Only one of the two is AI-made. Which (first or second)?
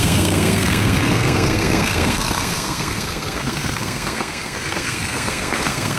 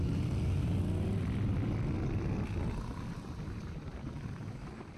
first